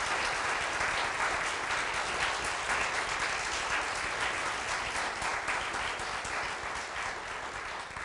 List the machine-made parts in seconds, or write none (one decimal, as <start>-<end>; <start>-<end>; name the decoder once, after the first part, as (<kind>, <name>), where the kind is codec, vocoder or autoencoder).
none